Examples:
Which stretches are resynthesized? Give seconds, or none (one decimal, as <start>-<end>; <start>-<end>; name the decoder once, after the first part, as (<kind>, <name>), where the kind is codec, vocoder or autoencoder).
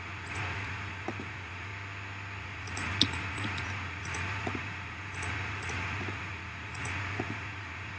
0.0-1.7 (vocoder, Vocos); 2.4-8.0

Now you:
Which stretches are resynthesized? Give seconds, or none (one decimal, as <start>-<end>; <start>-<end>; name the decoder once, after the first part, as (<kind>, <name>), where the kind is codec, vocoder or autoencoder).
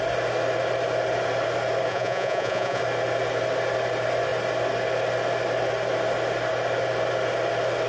1.9-2.8 (vocoder, Vocos)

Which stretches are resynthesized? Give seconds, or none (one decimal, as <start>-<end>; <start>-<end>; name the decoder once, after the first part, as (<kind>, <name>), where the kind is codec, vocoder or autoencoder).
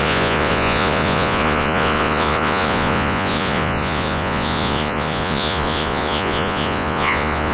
0.0-7.5 (vocoder, Vocos)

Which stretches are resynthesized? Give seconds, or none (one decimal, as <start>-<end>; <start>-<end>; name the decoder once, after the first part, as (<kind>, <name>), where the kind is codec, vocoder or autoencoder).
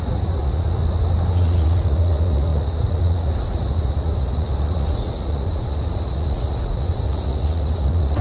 0.0-0.8 (vocoder, Vocos); 1.3-8.2